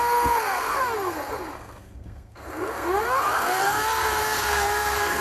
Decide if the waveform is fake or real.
fake